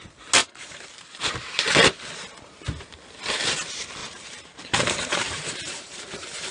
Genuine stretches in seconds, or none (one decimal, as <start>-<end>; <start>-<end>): 0.0-0.4; 1.2-4.0